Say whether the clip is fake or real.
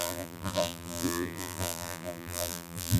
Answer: fake